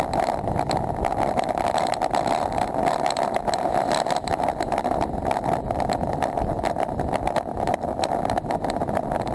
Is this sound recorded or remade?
recorded